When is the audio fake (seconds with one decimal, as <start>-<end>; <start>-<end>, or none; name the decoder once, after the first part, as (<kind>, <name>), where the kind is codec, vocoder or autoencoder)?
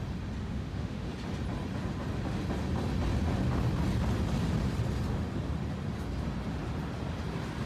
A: 0.4-1.1 (autoencoder, DAC-VAE)